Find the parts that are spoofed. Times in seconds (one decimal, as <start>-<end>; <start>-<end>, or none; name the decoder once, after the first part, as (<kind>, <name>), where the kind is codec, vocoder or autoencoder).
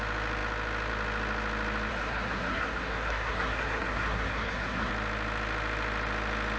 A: 1.9-4.9 (codec, SNAC)